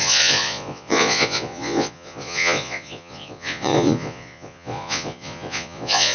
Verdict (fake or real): fake